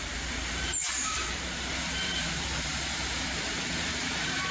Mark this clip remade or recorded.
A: remade